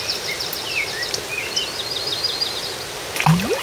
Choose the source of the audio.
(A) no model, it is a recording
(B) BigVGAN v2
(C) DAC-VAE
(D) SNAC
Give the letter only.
A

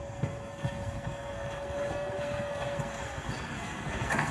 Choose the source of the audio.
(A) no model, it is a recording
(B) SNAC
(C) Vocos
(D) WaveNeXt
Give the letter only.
B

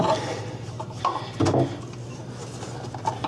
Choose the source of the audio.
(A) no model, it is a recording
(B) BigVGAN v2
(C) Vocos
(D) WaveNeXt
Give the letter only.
A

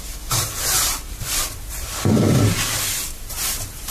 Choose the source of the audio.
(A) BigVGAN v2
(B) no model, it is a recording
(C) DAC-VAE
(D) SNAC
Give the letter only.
B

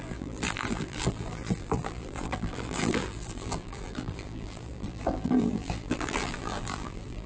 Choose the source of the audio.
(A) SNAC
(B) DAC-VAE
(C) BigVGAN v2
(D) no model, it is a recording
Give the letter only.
C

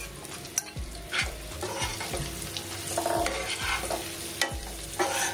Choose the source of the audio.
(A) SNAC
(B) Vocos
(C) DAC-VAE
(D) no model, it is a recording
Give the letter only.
D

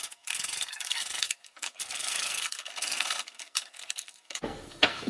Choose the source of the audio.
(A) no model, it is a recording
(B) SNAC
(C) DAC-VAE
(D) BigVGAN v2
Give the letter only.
B